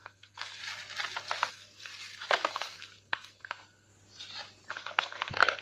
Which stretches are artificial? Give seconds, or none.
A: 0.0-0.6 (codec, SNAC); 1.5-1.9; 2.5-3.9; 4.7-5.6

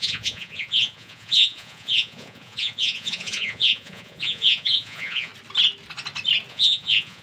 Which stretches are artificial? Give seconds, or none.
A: 0.0-5.3 (vocoder, Vocos); 6.5-7.2